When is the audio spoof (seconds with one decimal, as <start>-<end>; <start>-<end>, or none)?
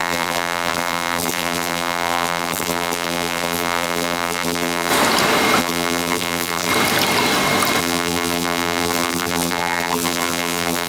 0.0-4.9; 5.6-6.7; 7.8-10.9